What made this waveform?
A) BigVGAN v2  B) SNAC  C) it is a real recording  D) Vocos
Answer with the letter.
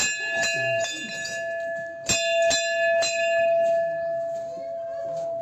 C